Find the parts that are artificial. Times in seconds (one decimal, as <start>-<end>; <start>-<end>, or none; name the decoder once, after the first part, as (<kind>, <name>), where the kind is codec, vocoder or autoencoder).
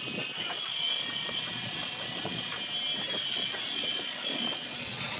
0.0-2.5 (vocoder, Vocos); 3.3-5.2